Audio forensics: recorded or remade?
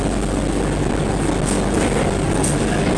recorded